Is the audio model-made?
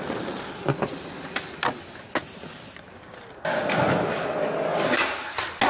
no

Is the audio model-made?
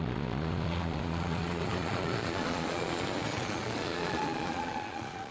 yes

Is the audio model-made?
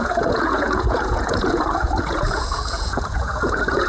yes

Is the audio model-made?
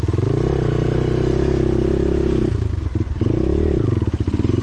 no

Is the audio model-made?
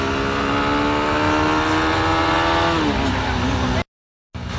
no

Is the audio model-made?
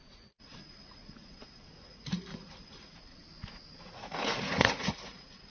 yes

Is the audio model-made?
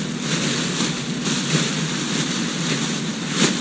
no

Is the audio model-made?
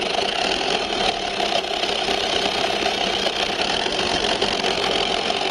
no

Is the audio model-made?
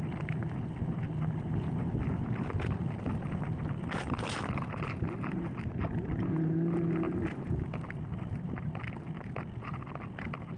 no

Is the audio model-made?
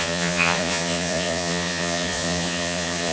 yes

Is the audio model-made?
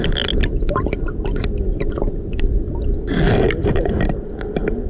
no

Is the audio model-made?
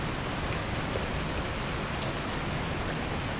no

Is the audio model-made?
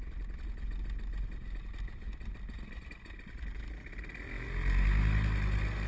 no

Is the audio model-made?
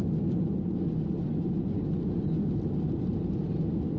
no